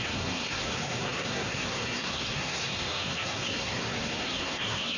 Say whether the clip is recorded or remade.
remade